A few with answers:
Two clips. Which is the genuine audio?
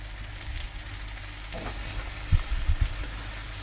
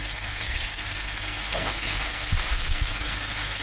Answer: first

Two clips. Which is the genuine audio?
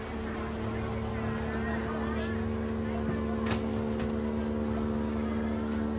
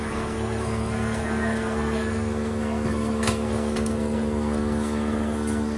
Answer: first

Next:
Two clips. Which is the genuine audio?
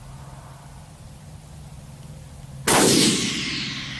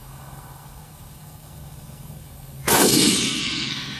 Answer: first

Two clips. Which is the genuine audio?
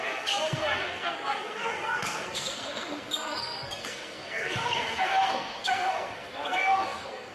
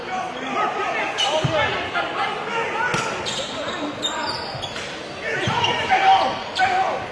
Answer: second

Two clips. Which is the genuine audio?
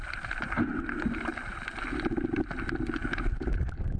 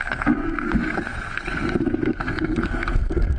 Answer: first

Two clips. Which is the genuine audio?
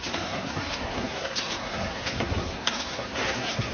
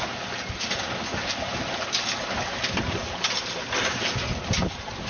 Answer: second